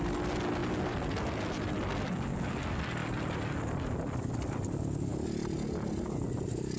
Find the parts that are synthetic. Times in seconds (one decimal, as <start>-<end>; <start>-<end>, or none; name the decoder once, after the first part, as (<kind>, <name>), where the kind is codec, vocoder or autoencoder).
none